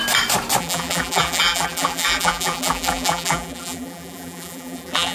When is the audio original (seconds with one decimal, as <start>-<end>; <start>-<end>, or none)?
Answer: 0.0-0.6